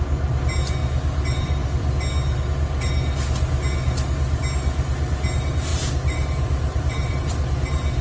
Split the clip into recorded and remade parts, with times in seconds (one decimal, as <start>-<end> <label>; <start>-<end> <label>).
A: 0.0-0.8 recorded; 0.8-2.0 remade; 2.0-5.7 recorded; 5.7-7.2 remade; 7.2-8.0 recorded